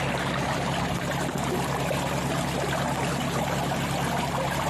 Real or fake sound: real